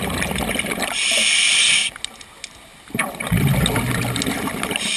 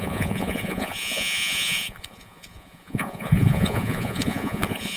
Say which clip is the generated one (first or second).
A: second